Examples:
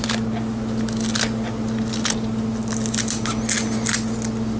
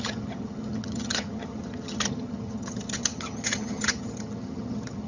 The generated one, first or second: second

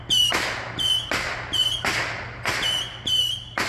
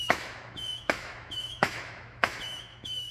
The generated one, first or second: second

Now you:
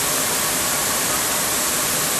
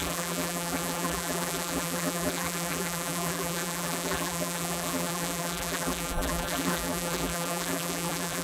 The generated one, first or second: second